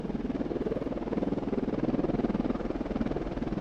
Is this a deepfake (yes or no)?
no